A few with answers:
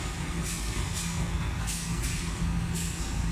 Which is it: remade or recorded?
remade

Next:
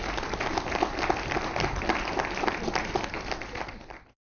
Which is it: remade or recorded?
recorded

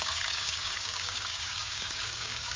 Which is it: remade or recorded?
remade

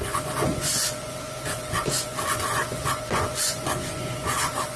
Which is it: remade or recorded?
remade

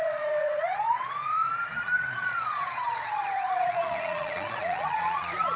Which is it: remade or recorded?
remade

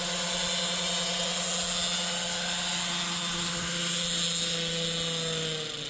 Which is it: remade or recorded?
recorded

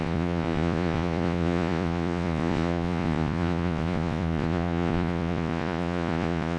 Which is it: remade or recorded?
remade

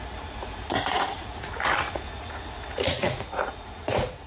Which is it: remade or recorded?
remade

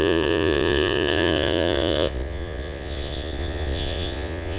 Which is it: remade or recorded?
remade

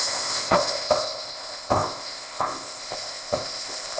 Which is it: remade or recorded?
remade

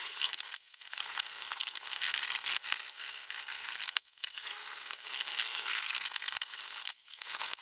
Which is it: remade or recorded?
remade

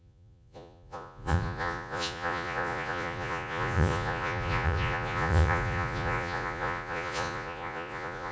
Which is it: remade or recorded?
remade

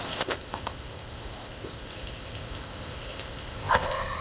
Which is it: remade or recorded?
remade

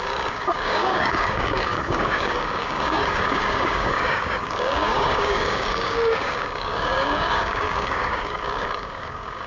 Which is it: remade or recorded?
remade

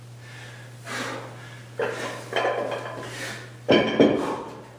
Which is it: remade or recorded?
recorded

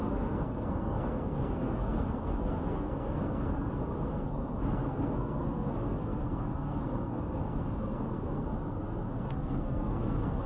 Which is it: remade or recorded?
remade